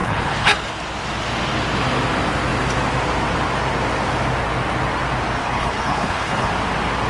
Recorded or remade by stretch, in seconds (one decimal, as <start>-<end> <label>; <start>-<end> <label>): 0.0-0.7 remade; 0.7-5.4 recorded; 5.4-6.5 remade; 6.5-7.1 recorded